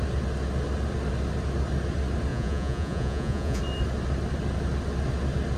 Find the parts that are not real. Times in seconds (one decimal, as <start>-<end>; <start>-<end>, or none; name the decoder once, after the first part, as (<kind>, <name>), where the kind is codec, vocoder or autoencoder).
2.3-3.6 (vocoder, Vocos)